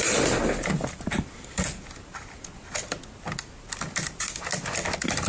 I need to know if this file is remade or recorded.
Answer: recorded